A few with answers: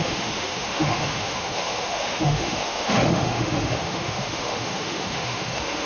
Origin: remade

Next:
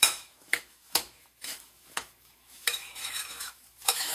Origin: remade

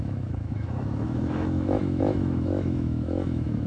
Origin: remade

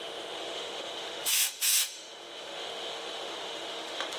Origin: remade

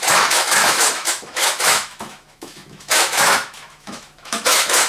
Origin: remade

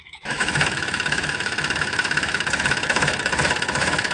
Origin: remade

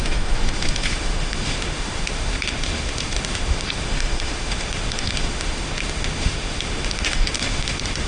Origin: remade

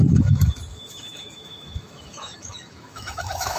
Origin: remade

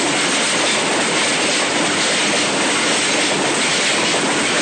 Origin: recorded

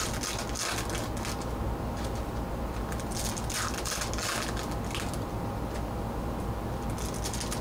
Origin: recorded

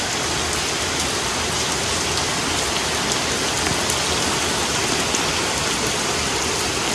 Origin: recorded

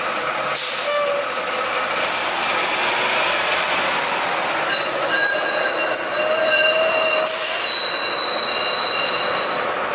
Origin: recorded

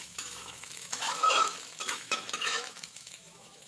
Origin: remade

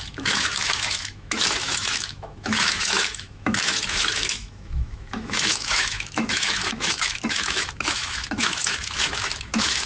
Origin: remade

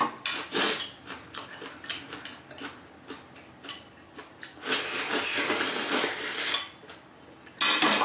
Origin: recorded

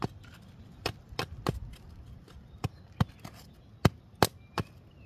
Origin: recorded